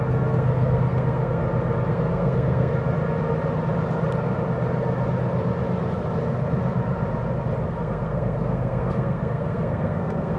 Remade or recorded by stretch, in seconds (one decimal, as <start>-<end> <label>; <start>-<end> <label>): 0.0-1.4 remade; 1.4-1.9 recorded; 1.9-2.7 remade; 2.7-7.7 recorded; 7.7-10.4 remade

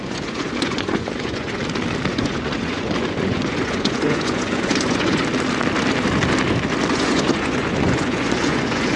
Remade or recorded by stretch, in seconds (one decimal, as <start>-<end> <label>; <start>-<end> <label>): 0.0-1.6 remade; 1.6-2.1 recorded; 2.1-5.2 remade; 5.2-6.9 recorded; 6.9-9.0 remade

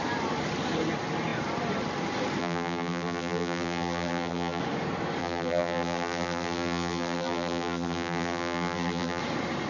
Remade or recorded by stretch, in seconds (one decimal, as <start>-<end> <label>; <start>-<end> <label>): 0.0-2.4 recorded; 2.4-4.6 remade; 4.6-5.2 recorded; 5.2-9.2 remade; 9.2-9.7 recorded